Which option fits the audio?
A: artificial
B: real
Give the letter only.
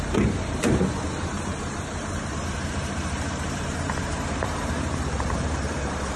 A